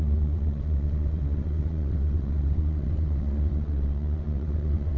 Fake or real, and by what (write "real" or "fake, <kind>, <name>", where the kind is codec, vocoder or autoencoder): fake, vocoder, WaveNeXt